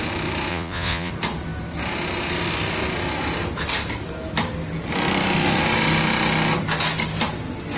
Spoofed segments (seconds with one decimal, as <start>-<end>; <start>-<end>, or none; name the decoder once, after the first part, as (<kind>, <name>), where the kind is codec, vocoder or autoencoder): 0.5-1.1 (vocoder, Vocos)